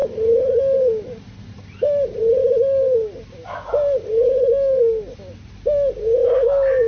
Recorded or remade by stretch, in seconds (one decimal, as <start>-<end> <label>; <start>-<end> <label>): 0.0-6.9 recorded